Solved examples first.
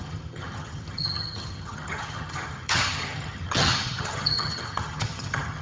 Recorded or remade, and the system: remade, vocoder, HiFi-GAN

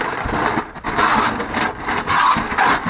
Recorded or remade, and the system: recorded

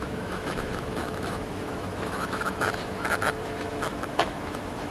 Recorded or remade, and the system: remade, autoencoder, DAC-VAE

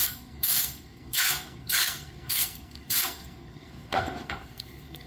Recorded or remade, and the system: remade, codec, SNAC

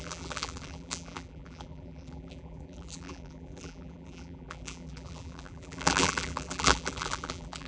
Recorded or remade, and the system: remade, vocoder, BigVGAN v2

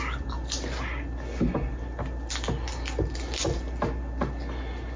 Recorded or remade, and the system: recorded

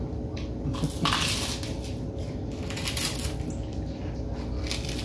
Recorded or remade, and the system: recorded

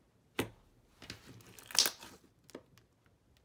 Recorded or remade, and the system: recorded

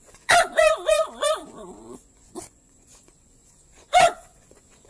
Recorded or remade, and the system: remade, vocoder, Vocos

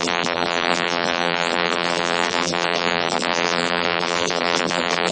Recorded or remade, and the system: remade, vocoder, BigVGAN v2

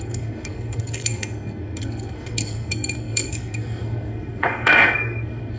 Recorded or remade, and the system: remade, codec, SNAC